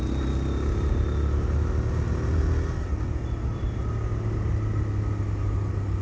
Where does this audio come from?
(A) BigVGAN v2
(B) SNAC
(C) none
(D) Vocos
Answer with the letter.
C